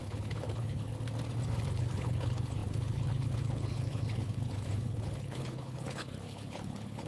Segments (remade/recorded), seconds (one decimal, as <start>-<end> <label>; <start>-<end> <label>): 0.0-0.9 remade; 0.9-1.8 recorded; 1.8-7.1 remade

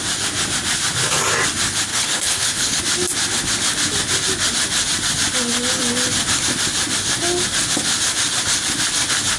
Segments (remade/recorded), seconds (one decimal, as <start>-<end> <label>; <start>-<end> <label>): 0.0-1.9 recorded; 1.9-2.8 remade; 2.8-9.4 recorded

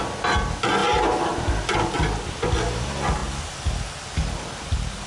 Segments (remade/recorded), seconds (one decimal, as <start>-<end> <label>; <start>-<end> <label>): 0.0-5.1 recorded

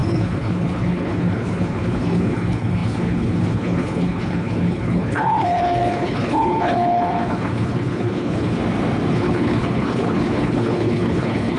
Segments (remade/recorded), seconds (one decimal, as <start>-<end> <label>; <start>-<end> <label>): 0.0-8.6 remade; 8.6-9.1 recorded; 9.1-11.6 remade

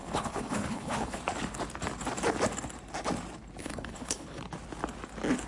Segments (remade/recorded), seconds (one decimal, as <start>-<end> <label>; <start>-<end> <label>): 0.0-1.2 remade; 1.2-3.6 recorded; 3.6-4.4 remade; 4.4-5.5 recorded

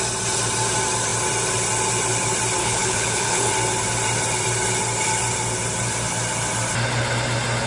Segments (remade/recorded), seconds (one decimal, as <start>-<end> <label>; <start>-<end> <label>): 0.0-2.6 recorded; 2.6-3.5 remade; 3.5-7.7 recorded